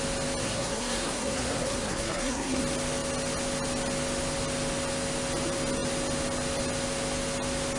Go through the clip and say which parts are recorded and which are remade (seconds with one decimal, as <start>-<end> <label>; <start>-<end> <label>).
0.0-0.4 recorded; 0.4-2.6 remade; 2.6-7.8 recorded